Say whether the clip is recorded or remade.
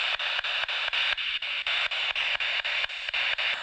recorded